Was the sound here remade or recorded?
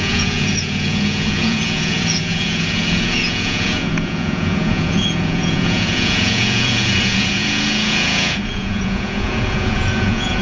remade